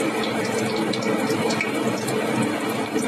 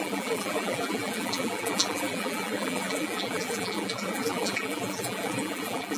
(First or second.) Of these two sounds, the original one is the first